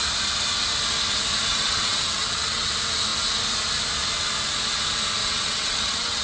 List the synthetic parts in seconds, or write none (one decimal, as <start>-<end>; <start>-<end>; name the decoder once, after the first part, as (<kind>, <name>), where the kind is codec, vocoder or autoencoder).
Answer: 1.5-2.7 (vocoder, WaveNeXt); 5.2-6.2